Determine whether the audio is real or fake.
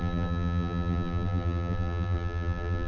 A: fake